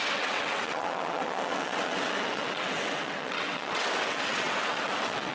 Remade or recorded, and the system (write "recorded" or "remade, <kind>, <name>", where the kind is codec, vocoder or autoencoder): remade, vocoder, WaveNeXt